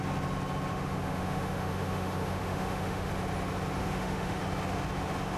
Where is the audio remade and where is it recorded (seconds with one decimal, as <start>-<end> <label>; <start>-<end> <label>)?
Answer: 0.0-0.7 recorded; 0.7-3.1 remade; 3.1-3.8 recorded; 3.8-4.4 remade; 4.4-5.4 recorded

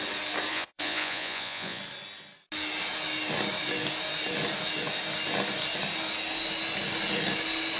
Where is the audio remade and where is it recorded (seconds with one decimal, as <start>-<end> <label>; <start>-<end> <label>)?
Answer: 0.0-0.5 recorded; 0.5-1.8 remade; 1.8-7.8 recorded

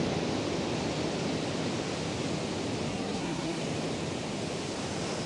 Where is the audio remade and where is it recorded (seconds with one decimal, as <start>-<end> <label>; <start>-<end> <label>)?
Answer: 0.0-2.9 recorded; 2.9-3.6 remade; 3.6-5.3 recorded

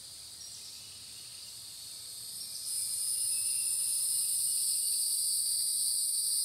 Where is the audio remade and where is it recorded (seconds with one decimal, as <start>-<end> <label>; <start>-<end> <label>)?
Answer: 0.0-1.3 recorded; 1.3-3.9 remade; 3.9-6.4 recorded

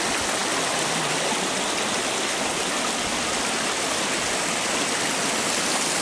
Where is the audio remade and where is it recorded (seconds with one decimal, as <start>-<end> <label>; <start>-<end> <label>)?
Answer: 0.0-6.0 recorded

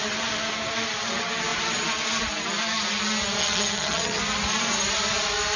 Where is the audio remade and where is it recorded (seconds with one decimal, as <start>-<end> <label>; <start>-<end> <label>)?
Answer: 0.0-3.4 recorded; 3.4-4.2 remade; 4.2-5.6 recorded

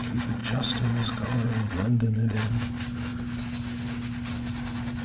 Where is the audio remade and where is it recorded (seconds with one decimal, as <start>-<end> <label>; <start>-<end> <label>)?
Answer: 0.0-0.4 recorded; 0.4-2.5 remade; 2.5-5.0 recorded